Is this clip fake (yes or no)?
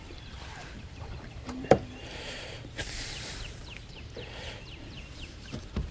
yes